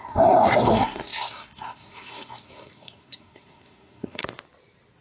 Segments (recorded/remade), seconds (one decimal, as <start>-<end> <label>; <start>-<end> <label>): 0.0-4.2 remade; 4.2-5.0 recorded